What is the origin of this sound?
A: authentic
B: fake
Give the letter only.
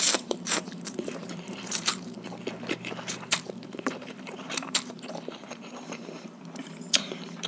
B